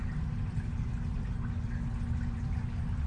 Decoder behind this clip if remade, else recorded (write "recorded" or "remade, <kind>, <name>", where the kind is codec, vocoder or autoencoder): recorded